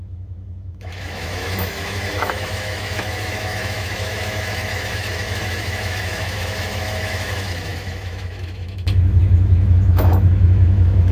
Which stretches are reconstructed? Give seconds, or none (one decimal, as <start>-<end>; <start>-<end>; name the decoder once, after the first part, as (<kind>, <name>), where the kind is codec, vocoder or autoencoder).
0.0-11.1 (autoencoder, DAC-VAE)